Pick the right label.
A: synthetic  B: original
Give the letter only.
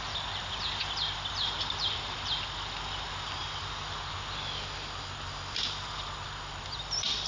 B